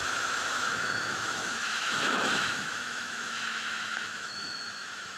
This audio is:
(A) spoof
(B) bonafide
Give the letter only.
A